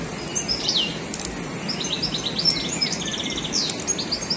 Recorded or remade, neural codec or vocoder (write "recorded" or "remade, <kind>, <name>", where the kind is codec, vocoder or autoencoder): recorded